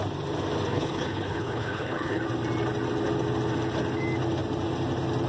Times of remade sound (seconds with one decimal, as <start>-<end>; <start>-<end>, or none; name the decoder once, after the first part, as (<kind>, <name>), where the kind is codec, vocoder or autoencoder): 0.7-2.2 (codec, HILCodec)

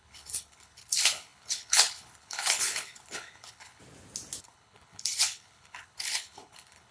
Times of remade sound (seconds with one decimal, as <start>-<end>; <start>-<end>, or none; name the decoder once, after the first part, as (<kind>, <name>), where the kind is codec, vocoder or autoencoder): 0.0-3.8 (codec, HILCodec); 4.4-6.9

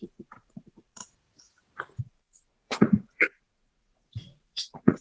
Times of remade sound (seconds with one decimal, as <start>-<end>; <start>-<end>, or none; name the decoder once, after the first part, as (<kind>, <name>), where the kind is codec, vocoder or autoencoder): 0.0-1.0 (vocoder, Vocos); 2.0-5.0

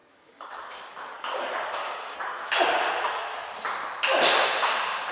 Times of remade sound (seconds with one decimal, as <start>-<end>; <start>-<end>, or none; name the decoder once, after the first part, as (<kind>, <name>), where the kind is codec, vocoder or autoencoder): 0.0-1.4 (codec, DAC); 1.8-2.5

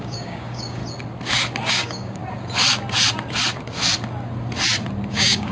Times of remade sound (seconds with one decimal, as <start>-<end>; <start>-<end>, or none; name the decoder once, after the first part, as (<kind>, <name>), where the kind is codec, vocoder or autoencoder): 0.0-0.8 (codec, DAC); 1.7-2.2; 5.1-5.5

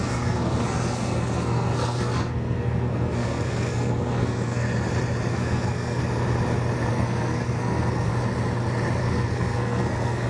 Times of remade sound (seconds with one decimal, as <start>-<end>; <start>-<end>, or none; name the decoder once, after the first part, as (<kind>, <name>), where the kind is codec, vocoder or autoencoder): 0.0-4.7 (codec, SNAC); 5.3-6.0; 6.9-8.1; 9.0-10.3

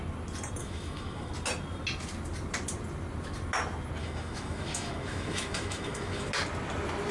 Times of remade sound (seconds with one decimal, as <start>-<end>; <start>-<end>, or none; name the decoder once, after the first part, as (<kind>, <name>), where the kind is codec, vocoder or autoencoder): 0.6-1.3 (autoencoder, DAC-VAE); 4.0-6.3

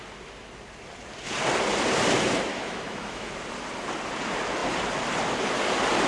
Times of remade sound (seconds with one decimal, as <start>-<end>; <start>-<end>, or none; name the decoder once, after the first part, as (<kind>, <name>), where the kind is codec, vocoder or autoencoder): 2.5-3.3 (autoencoder, DAC-VAE)